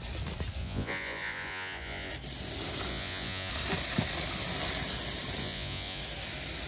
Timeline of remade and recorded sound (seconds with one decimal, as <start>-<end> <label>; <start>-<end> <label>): 0.0-0.6 recorded; 0.6-2.1 remade; 2.1-2.9 recorded; 2.9-3.5 remade; 3.5-5.4 recorded; 5.4-6.0 remade; 6.0-6.7 recorded